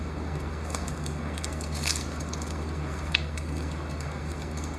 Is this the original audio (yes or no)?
no